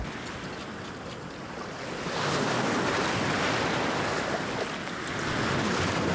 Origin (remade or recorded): recorded